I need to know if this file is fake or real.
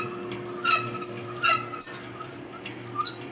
real